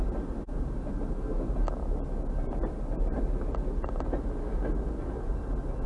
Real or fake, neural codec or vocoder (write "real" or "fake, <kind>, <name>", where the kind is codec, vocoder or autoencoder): real